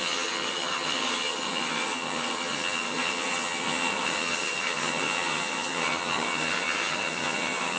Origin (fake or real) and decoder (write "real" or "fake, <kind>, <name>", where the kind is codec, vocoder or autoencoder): fake, vocoder, HiFi-GAN